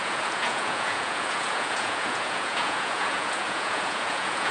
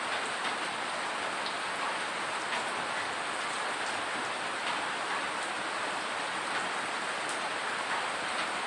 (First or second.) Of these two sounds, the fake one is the first